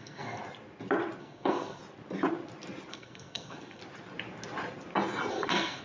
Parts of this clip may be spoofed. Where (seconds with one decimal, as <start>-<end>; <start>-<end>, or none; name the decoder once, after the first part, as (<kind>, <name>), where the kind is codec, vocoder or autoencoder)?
0.0-0.4 (codec, SNAC); 1.2-1.8; 2.9-3.8; 5.3-5.8